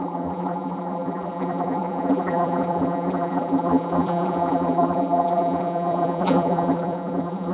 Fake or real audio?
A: fake